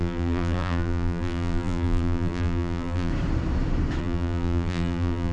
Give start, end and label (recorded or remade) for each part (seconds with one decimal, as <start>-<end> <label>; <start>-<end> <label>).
0.0-3.1 remade; 3.1-4.0 recorded; 4.0-5.3 remade